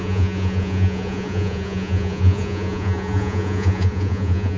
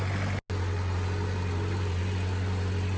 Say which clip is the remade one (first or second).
first